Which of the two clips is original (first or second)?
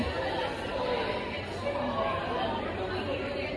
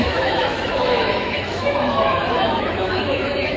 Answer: first